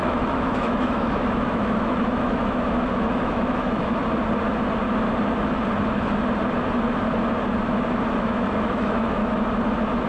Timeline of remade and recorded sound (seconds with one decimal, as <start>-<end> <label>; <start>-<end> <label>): 0.0-4.0 remade; 4.0-8.1 recorded; 8.1-9.2 remade; 9.2-10.1 recorded